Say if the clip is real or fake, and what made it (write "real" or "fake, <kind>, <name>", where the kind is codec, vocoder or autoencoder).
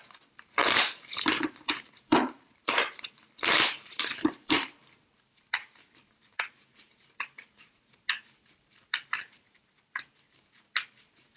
fake, vocoder, BigVGAN v2